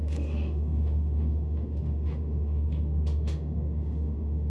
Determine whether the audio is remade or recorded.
remade